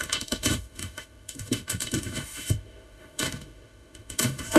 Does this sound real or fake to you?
fake